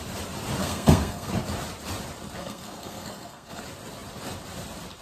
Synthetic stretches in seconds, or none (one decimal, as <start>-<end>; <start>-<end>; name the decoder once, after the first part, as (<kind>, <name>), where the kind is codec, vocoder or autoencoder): 0.6-1.3 (codec, SNAC); 2.4-3.6